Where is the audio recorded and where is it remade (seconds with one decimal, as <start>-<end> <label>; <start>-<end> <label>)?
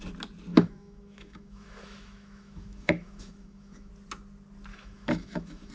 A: 0.0-0.5 recorded; 0.5-3.9 remade; 3.9-4.7 recorded; 4.7-5.7 remade